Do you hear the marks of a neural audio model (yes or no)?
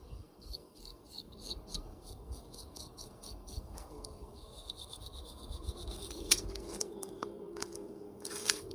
yes